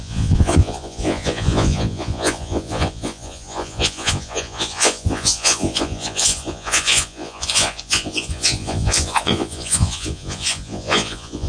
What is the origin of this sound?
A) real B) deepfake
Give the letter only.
B